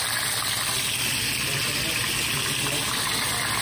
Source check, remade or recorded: recorded